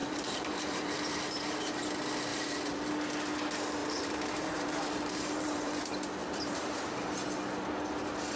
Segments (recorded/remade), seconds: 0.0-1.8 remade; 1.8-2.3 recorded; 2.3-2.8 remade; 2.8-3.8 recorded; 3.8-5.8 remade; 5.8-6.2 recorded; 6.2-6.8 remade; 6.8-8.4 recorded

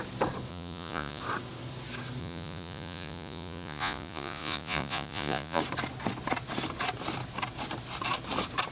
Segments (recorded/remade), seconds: 0.0-0.5 recorded; 0.5-1.2 remade; 1.2-2.2 recorded; 2.2-5.6 remade; 5.6-8.7 recorded